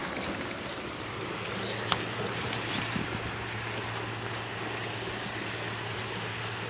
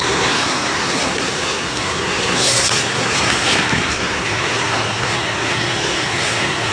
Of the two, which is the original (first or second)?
first